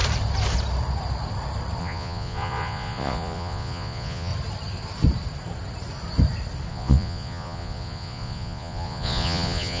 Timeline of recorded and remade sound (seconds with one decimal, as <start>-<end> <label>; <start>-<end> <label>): 0.0-1.8 recorded; 1.8-4.3 remade; 4.3-6.7 recorded; 6.7-9.8 remade